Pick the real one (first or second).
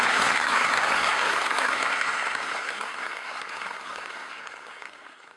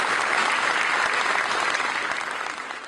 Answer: second